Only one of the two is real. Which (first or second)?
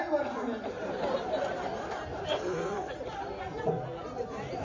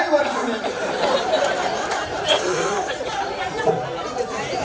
first